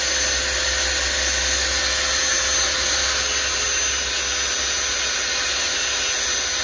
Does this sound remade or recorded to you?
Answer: recorded